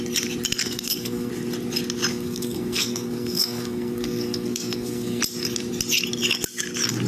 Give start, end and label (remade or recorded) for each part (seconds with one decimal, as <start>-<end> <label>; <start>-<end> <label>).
0.0-0.6 recorded; 0.6-1.3 remade; 1.3-2.1 recorded; 2.1-5.2 remade; 5.2-7.1 recorded